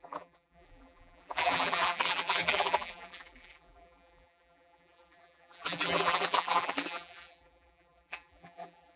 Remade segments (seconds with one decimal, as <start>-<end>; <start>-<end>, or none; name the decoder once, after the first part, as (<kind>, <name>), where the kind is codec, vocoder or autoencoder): 0.0-9.0 (vocoder, BigVGAN v2)